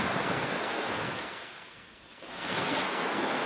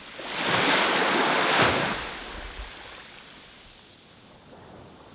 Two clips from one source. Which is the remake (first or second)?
first